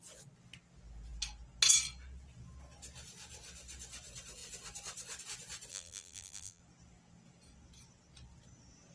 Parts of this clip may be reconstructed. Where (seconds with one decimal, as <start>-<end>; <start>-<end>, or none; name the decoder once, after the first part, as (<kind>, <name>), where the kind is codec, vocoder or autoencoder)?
5.7-6.6 (vocoder, BigVGAN v2)